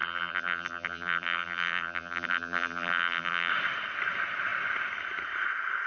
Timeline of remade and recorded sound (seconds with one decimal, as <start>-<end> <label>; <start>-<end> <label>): 0.0-3.5 remade; 3.5-5.9 recorded